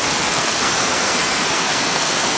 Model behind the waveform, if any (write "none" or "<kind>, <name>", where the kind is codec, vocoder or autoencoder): codec, SNAC